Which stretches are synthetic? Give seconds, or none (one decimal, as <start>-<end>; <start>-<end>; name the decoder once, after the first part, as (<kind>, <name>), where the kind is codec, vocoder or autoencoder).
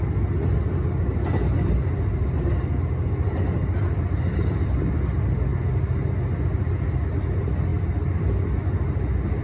none